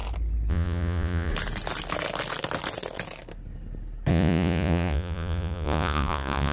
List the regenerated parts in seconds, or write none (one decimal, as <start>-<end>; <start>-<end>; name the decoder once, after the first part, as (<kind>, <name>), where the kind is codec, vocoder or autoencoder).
0.5-1.3 (vocoder, Vocos); 4.1-6.5